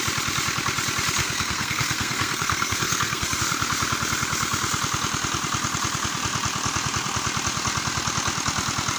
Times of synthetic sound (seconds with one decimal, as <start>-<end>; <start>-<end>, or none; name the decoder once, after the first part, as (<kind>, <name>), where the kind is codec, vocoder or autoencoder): 1.2-3.4 (codec, SNAC)

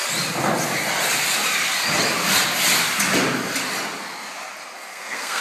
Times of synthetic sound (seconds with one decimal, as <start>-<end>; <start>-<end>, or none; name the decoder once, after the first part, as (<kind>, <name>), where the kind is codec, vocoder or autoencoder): 4.9-5.4 (codec, SNAC)

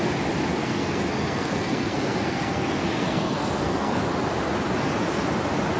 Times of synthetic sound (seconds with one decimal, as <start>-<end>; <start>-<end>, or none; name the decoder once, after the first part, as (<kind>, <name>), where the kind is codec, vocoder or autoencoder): 0.5-4.0 (codec, SNAC)

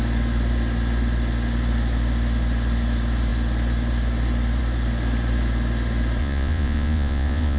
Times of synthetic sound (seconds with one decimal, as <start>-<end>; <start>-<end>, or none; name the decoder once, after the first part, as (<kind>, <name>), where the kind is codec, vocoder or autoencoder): 6.2-7.6 (vocoder, Vocos)

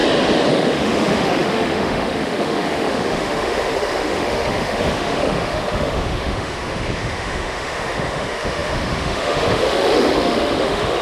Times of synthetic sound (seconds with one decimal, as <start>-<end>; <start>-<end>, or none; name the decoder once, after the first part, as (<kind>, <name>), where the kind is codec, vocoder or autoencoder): 0.5-11.0 (autoencoder, DAC-VAE)

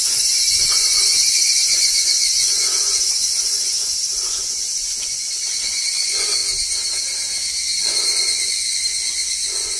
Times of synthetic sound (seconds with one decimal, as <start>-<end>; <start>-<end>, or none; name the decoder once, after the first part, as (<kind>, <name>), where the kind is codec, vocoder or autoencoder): 0.0-6.4 (vocoder, Vocos); 7.8-9.8

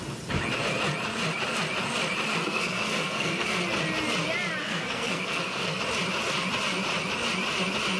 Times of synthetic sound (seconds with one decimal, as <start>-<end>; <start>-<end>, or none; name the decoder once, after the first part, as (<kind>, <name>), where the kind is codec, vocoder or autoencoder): 2.4-3.6 (codec, SNAC); 4.6-5.8

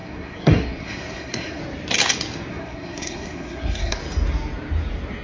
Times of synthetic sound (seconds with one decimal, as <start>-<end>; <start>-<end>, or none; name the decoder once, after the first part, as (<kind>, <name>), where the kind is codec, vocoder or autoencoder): 0.0-1.6 (codec, SNAC); 2.5-4.0